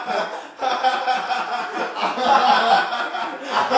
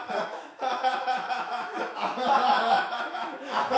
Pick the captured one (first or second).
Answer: first